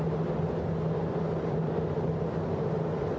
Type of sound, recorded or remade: recorded